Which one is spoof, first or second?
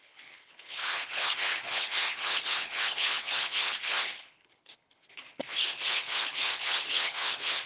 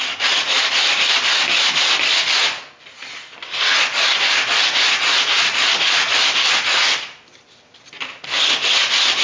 first